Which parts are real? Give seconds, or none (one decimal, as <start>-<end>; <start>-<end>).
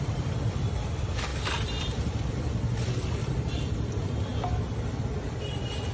1.3-2.2; 4.3-5.2